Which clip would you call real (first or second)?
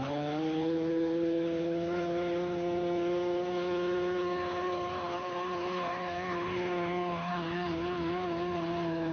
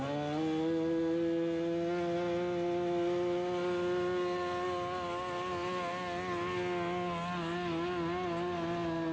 second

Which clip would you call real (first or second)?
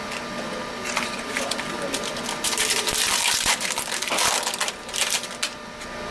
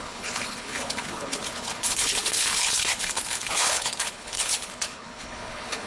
first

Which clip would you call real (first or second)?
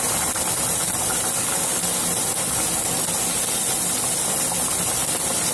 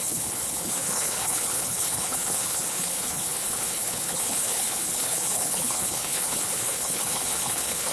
first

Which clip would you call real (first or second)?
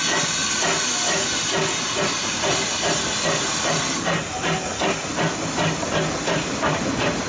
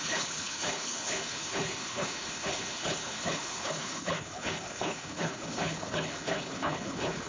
first